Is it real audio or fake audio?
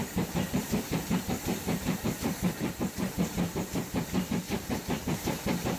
fake